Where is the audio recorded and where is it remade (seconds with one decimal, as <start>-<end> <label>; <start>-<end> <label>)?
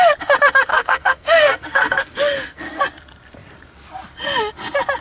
0.0-0.7 recorded; 0.7-2.8 remade; 2.8-5.0 recorded